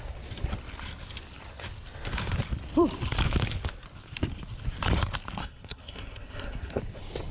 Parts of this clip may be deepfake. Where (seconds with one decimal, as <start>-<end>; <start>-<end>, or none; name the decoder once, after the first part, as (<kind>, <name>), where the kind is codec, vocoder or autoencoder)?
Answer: 5.4-6.8 (codec, SNAC)